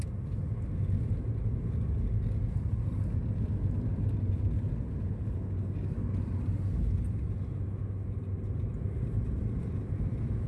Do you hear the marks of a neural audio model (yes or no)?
no